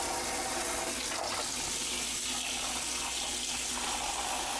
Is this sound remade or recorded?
recorded